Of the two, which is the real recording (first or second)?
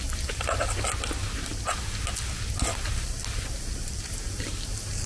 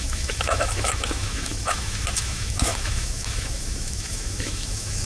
first